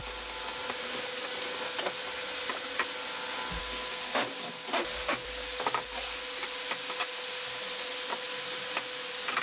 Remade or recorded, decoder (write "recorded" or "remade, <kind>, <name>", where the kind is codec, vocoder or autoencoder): recorded